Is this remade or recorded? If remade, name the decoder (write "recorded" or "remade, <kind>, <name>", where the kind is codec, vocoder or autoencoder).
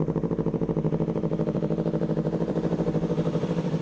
remade, vocoder, BigVGAN v2